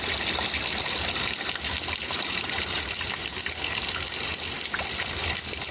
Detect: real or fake real